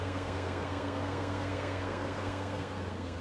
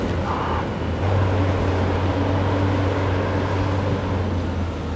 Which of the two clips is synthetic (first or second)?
first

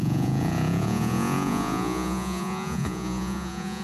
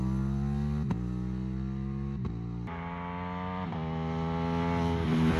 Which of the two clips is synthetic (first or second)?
first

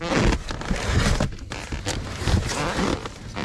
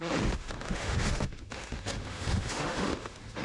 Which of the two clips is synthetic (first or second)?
second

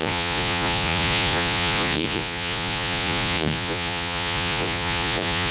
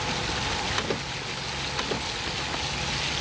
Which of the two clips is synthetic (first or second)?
first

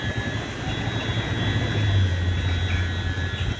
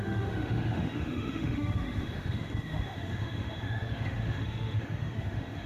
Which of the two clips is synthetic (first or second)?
second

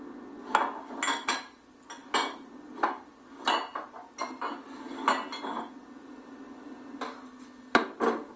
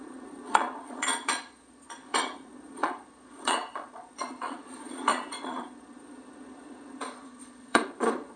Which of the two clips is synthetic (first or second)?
second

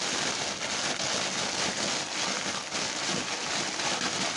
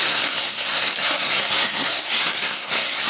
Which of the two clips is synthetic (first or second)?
second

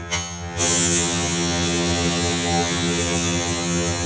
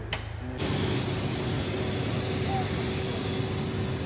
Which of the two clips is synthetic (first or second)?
first